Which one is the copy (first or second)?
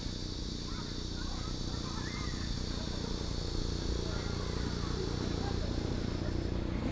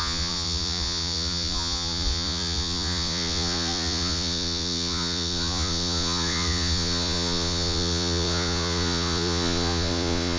second